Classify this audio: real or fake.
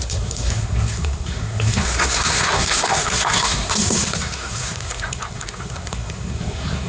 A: fake